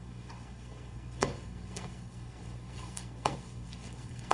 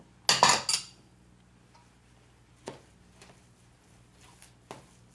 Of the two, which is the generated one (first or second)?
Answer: first